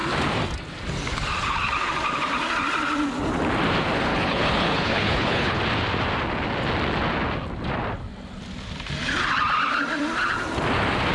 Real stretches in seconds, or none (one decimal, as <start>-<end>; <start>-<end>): 0.0-4.1; 5.6-11.1